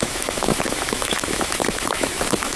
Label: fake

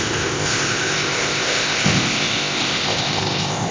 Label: fake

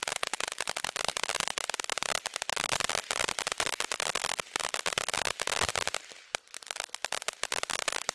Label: real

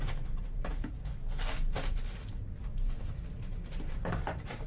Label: fake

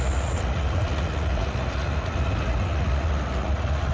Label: fake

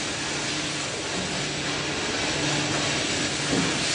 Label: real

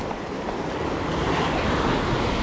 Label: real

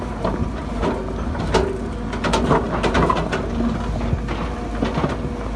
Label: real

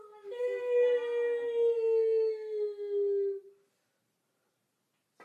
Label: real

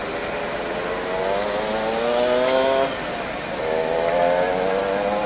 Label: real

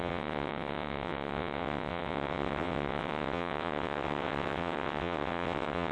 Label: fake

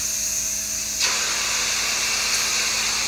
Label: real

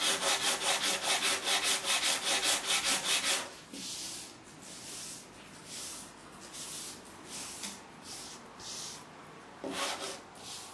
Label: real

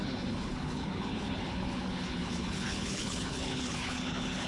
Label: fake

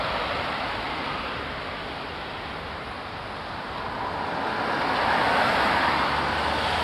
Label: real